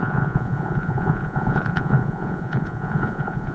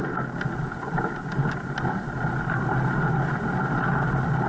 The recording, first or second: second